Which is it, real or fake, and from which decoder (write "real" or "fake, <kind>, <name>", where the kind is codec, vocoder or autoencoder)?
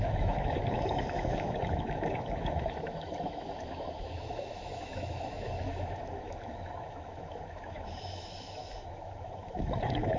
fake, autoencoder, DAC-VAE